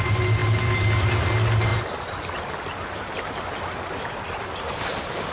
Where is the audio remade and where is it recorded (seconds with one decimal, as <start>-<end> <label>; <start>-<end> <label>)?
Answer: 0.0-5.3 recorded